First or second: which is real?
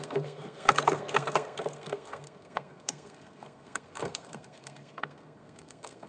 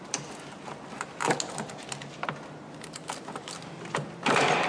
second